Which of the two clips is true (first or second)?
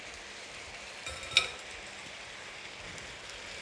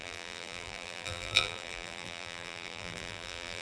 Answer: first